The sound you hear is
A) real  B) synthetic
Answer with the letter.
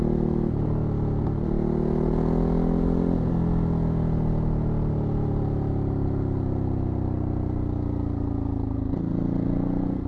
A